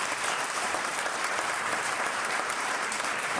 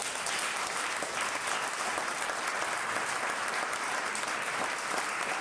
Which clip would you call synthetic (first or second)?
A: first